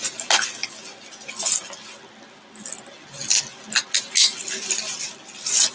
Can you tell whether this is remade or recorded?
recorded